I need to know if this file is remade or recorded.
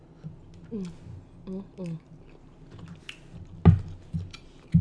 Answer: recorded